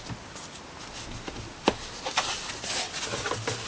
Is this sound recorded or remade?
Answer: recorded